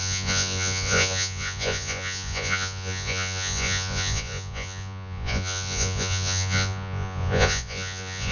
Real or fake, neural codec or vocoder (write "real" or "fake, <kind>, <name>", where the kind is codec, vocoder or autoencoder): fake, vocoder, Vocos